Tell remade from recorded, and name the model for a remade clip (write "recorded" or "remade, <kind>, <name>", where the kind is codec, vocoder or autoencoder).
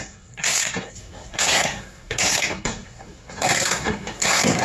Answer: remade, codec, SNAC